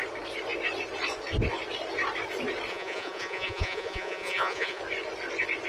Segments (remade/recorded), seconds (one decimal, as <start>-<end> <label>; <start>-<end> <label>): 0.0-2.7 recorded; 2.7-4.8 remade; 4.8-5.7 recorded